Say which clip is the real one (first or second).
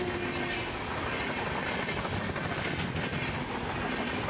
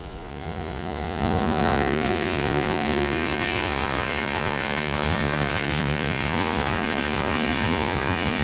first